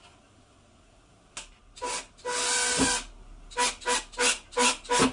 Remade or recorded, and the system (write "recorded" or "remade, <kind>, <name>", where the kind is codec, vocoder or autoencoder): recorded